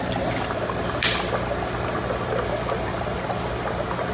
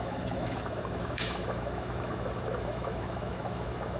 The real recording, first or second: first